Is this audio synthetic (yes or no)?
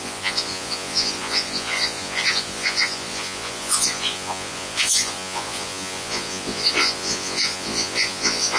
yes